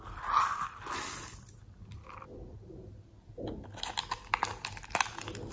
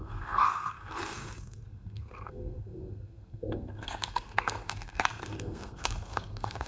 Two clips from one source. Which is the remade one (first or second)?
second